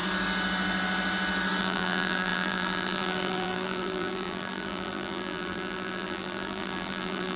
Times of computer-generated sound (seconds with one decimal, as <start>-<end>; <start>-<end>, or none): 1.6-7.4